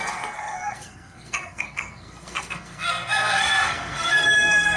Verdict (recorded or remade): remade